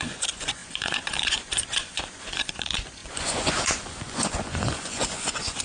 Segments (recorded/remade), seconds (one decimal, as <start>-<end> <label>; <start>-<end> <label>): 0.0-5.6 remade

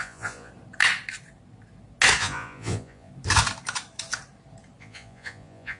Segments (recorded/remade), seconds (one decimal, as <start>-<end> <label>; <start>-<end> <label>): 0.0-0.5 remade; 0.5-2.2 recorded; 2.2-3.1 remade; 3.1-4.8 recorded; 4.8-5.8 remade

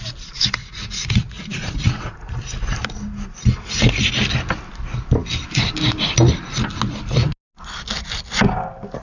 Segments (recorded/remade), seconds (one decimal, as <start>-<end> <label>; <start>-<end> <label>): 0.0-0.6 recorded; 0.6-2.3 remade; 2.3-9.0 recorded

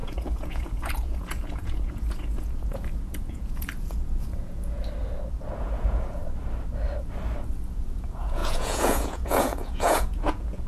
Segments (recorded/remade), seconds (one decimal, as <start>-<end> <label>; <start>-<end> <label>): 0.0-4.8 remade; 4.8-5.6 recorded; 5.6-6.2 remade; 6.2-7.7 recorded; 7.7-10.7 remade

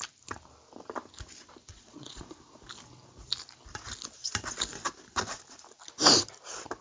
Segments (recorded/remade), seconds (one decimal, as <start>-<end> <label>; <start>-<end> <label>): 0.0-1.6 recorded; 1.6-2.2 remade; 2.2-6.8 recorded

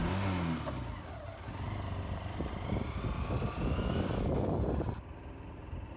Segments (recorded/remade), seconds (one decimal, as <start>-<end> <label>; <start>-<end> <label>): 0.0-6.0 recorded